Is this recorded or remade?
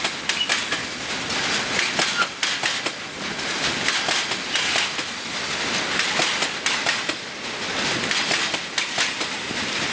recorded